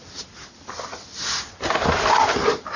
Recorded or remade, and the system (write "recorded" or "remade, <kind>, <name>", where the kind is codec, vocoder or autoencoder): recorded